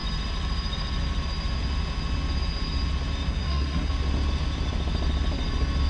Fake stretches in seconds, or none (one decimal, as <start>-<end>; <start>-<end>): 3.3-3.9